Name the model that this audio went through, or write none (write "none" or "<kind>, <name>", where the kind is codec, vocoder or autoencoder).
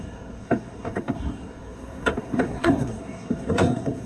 codec, SNAC